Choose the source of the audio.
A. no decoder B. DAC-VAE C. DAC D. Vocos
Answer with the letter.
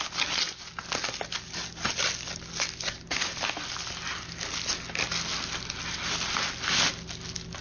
A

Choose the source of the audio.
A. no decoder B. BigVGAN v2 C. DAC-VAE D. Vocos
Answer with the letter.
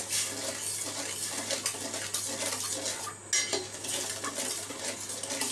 A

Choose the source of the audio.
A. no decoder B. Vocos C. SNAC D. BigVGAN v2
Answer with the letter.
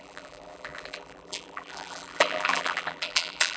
D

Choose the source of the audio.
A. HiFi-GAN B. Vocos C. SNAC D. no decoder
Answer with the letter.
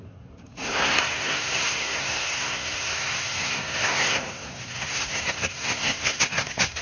C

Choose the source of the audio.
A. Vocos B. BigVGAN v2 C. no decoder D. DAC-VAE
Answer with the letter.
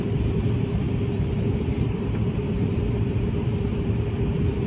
B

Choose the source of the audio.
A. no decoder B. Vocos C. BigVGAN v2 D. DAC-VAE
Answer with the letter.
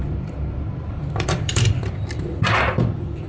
C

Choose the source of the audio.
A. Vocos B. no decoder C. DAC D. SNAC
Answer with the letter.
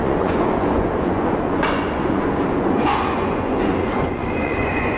A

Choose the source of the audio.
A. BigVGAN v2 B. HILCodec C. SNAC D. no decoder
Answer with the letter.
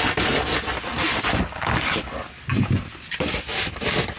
D